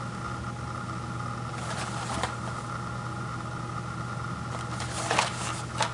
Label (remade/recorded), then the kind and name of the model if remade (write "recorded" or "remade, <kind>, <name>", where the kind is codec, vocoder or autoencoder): recorded